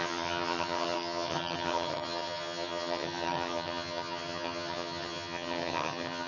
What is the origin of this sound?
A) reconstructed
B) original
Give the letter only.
A